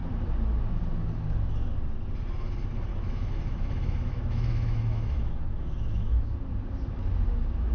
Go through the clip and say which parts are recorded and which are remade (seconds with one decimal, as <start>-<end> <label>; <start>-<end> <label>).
0.0-2.9 recorded; 2.9-6.3 remade; 6.3-7.7 recorded

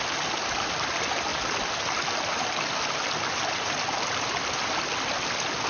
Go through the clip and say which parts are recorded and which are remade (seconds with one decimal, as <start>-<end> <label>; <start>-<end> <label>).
0.0-5.7 recorded